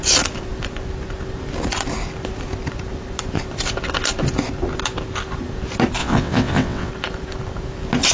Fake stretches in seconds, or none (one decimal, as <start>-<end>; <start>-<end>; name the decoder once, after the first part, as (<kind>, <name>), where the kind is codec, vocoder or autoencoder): 6.0-6.9 (vocoder, WaveNeXt)